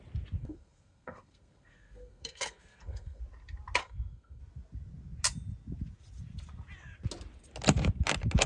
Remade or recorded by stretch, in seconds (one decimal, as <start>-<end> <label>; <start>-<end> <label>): 0.0-0.4 recorded; 0.4-3.2 remade; 3.2-3.8 recorded; 3.8-4.4 remade; 4.4-8.5 recorded